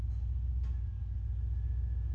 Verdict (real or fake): real